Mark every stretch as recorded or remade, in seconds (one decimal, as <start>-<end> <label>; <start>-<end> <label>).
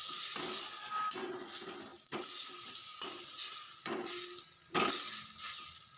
0.0-6.0 recorded